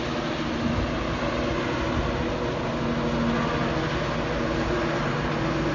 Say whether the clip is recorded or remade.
recorded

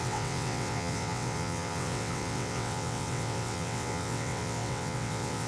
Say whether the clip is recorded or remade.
remade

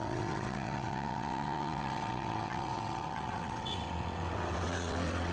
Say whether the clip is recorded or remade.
remade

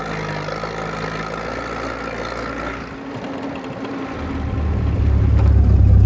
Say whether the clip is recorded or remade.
recorded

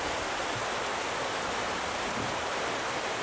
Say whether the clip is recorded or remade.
recorded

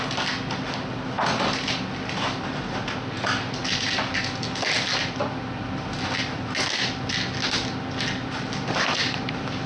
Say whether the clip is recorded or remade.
recorded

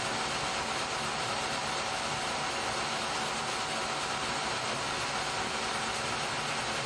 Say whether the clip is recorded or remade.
recorded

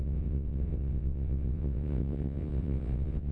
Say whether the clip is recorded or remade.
remade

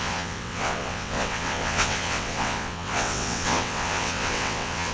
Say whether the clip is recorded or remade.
remade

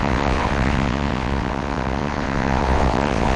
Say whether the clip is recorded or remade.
remade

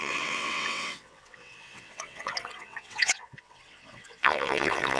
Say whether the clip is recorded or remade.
remade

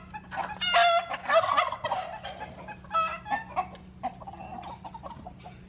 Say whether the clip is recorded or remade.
recorded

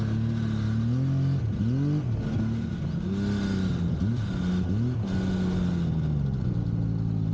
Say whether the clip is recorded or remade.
recorded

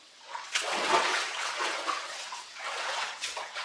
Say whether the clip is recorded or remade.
remade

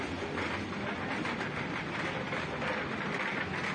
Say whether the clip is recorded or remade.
recorded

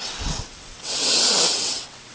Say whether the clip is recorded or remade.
remade